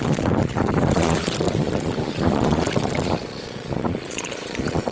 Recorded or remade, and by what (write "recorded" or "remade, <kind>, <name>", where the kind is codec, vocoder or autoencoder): remade, vocoder, Vocos